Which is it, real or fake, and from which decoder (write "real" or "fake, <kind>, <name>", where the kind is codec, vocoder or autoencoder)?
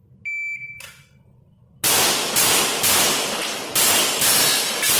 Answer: real